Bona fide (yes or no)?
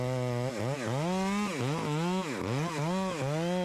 yes